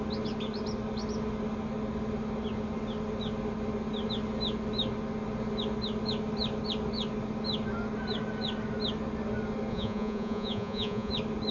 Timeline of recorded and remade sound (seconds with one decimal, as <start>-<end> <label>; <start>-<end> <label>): 0.0-9.7 recorded; 9.7-11.1 remade; 11.1-11.5 recorded